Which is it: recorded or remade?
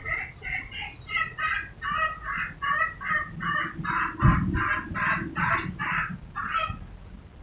recorded